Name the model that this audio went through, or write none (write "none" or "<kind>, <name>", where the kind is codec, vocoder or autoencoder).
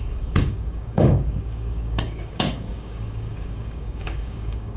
codec, DAC